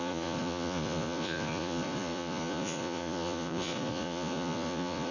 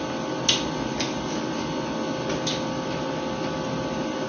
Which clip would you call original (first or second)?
second